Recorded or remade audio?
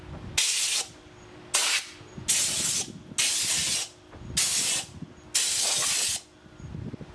recorded